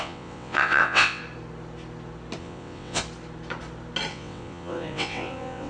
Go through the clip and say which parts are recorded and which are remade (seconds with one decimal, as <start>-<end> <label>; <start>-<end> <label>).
0.0-1.2 remade; 1.2-2.4 recorded; 2.4-3.0 remade; 3.0-4.1 recorded; 4.1-5.7 remade